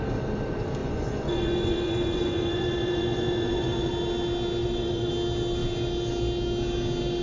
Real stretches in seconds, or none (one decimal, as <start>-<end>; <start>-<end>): 0.0-0.8; 3.9-4.6; 5.1-7.2